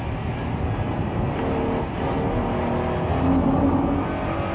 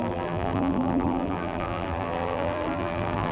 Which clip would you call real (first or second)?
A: first